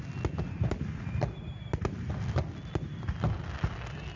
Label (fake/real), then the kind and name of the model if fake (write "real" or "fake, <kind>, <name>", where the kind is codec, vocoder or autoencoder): real